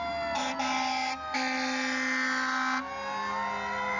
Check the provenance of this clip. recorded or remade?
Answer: recorded